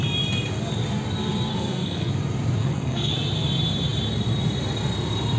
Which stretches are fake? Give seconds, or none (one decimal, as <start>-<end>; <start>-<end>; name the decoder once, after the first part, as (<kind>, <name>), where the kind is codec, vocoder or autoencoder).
1.5-2.1 (codec, SNAC); 2.6-3.1